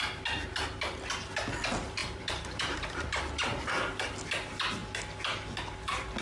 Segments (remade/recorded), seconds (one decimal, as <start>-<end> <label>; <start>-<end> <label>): 0.0-2.0 recorded; 2.0-3.2 remade; 3.2-6.2 recorded